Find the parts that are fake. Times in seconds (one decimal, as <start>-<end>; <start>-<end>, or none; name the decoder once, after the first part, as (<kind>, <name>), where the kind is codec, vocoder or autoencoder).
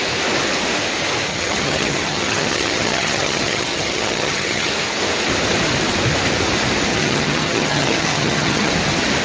1.3-4.7 (vocoder, HiFi-GAN); 6.9-8.7